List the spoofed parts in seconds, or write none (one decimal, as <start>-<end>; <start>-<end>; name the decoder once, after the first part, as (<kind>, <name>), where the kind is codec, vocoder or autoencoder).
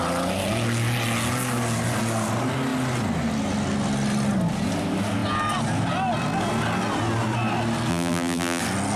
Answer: 7.9-8.6 (vocoder, BigVGAN v2)